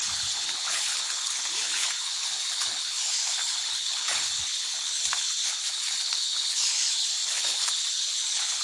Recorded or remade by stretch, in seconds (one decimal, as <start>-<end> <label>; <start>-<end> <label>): 0.0-8.6 remade